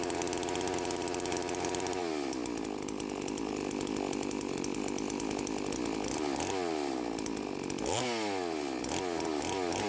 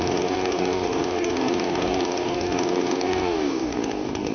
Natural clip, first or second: first